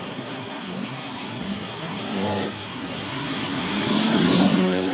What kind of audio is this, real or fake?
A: fake